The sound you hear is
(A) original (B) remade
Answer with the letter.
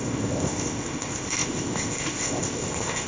B